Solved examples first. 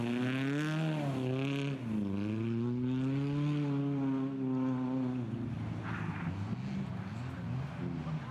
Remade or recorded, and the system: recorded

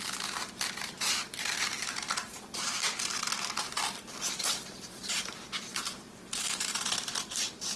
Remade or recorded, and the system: remade, vocoder, BigVGAN v2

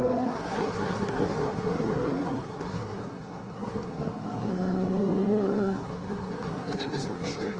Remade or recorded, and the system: remade, codec, SNAC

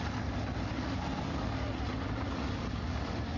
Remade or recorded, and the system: recorded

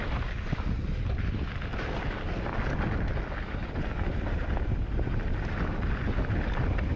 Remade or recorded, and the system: recorded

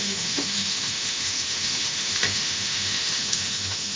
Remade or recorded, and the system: remade, autoencoder, DAC-VAE